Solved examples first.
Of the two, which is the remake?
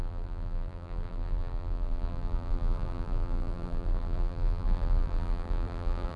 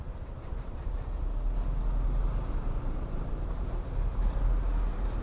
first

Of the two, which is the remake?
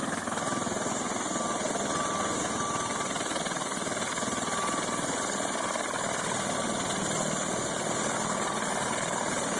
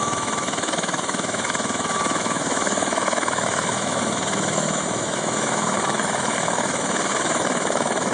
second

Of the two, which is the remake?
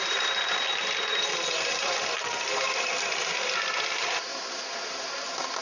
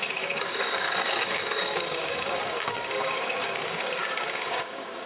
second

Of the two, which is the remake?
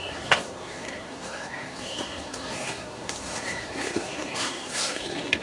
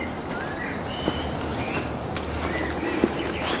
first